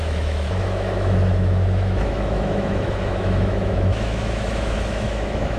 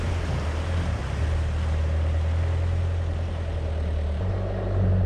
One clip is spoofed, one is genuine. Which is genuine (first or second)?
second